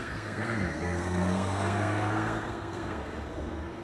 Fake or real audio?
fake